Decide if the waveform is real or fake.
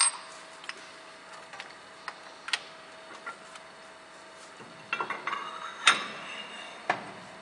real